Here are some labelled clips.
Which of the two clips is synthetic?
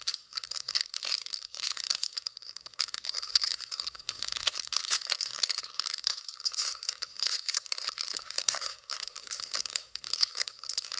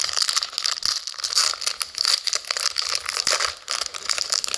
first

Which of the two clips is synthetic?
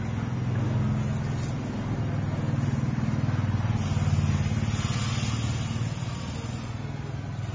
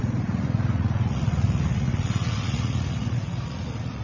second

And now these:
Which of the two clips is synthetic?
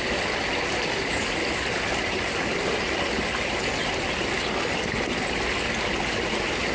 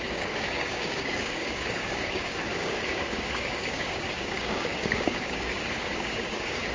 second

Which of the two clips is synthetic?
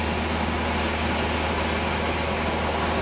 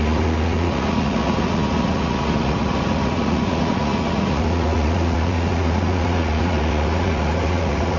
second